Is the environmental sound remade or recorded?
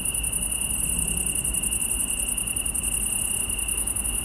recorded